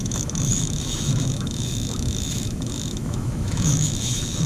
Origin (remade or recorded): remade